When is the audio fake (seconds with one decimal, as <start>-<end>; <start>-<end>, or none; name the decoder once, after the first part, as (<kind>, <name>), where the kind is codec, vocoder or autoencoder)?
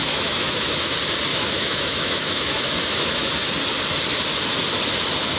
0.0-0.7 (autoencoder, DAC-VAE); 1.3-3.3